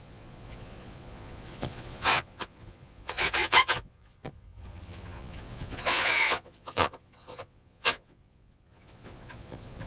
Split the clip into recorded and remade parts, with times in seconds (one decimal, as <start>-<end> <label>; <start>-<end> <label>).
0.0-9.9 remade